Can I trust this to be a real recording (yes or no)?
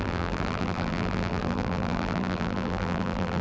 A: no